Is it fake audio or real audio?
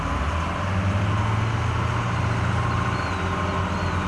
real